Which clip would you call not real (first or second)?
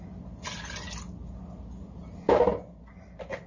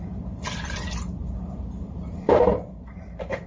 second